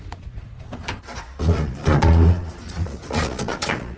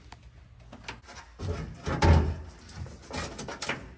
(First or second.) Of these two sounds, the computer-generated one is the first